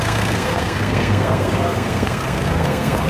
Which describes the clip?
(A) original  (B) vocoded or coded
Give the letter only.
B